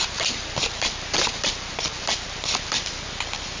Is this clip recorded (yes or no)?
yes